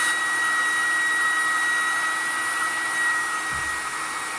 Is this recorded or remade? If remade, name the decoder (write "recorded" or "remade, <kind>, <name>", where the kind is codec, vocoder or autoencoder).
recorded